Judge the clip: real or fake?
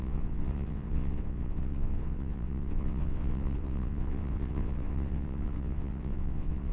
fake